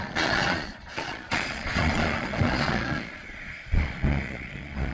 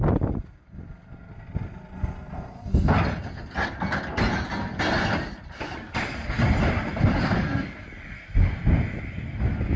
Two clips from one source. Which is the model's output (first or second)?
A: first